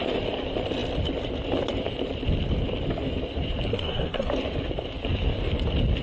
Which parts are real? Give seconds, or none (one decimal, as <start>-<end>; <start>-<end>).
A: 0.0-3.7; 4.3-6.0